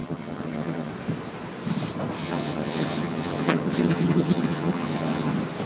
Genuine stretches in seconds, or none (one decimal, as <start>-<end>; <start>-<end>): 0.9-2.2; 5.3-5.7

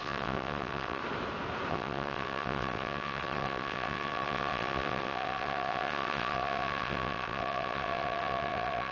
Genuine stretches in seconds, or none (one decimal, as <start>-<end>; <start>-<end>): 1.0-1.7

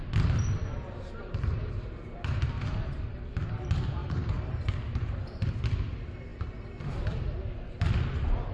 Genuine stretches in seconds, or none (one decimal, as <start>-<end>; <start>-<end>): 0.0-4.0; 5.2-8.5